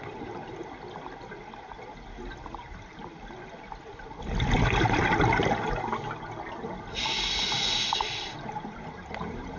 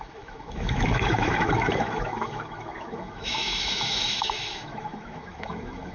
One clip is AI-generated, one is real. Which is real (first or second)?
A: first